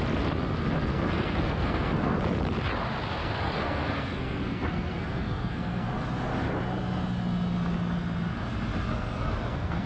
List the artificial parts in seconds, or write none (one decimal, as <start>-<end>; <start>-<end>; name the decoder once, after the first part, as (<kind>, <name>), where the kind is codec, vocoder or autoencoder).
0.9-2.2 (codec, SNAC); 3.2-5.9; 8.9-9.9